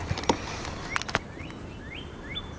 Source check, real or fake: real